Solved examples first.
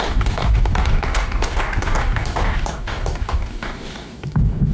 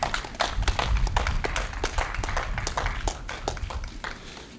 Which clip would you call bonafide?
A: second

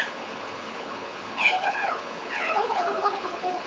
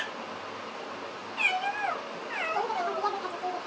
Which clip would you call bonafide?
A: second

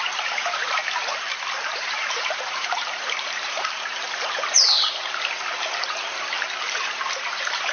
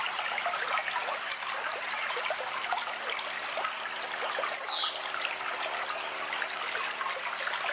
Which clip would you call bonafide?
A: second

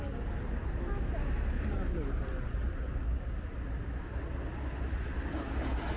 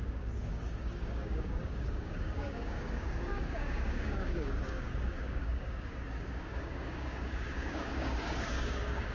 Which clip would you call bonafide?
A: first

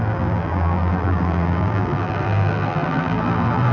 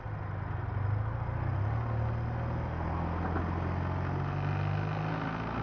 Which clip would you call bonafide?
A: second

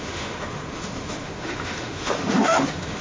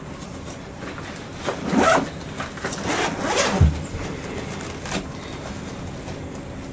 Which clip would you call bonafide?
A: second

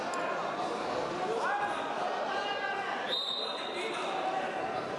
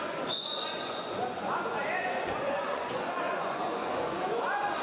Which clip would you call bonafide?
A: first